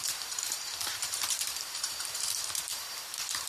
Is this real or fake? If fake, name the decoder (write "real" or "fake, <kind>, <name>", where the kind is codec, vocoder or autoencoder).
fake, vocoder, BigVGAN v2